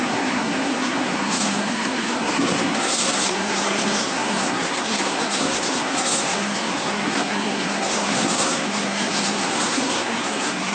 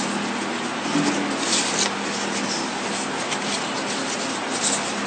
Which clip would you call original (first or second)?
second